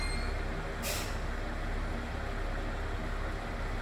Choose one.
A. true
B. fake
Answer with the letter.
A